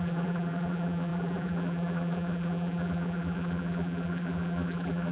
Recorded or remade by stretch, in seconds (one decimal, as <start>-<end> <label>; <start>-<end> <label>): 0.0-5.1 remade